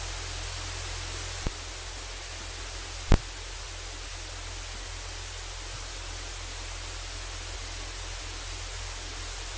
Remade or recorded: recorded